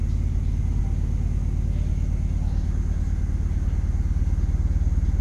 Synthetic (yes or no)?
no